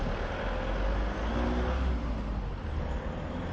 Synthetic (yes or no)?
no